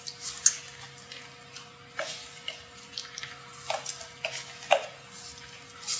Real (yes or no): yes